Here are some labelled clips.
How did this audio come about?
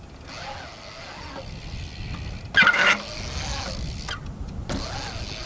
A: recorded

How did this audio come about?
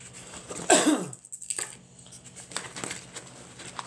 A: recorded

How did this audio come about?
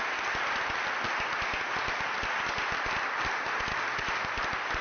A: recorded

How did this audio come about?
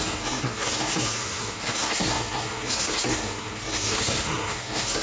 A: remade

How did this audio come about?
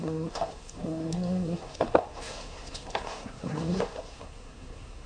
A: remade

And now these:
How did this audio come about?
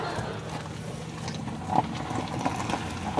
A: recorded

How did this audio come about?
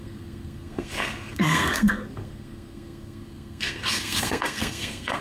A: remade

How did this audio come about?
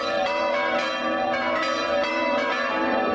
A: remade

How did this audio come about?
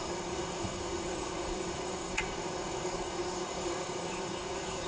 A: remade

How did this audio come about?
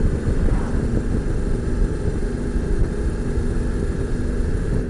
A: recorded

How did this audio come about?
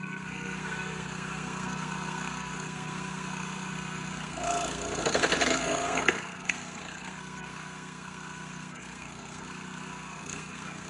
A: remade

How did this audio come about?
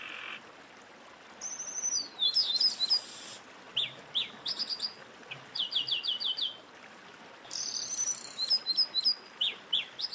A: recorded